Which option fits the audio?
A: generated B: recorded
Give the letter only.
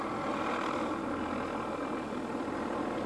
B